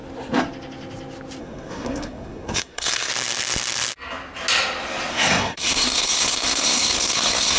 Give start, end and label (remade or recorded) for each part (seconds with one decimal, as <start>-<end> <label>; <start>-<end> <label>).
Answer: 0.0-1.4 recorded; 1.4-3.1 remade; 3.1-5.1 recorded; 5.1-7.6 remade